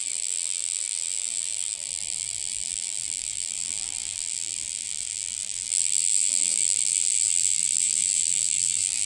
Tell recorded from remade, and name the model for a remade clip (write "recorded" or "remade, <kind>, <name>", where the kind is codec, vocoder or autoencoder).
remade, vocoder, BigVGAN v2